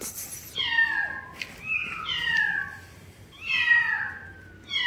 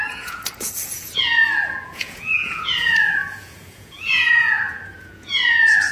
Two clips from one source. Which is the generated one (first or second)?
second